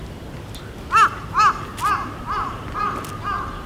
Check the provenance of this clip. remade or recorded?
recorded